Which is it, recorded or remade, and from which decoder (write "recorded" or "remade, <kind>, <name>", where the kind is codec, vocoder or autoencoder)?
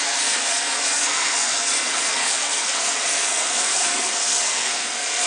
remade, codec, SNAC